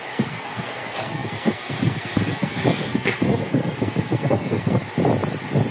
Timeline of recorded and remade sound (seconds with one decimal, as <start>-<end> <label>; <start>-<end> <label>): 0.0-4.8 remade; 4.8-5.7 recorded